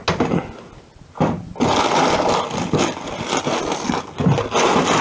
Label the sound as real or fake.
real